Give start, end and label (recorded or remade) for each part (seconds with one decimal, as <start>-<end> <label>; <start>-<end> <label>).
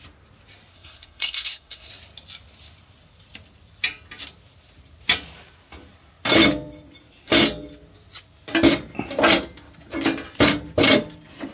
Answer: 0.0-0.7 recorded; 0.7-1.9 remade; 1.9-11.5 recorded